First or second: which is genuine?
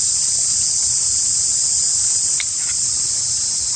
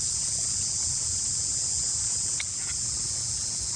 first